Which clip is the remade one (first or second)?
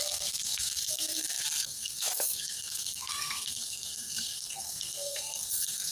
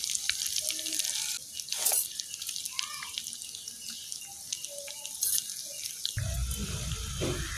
first